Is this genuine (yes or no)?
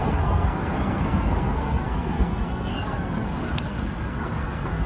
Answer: no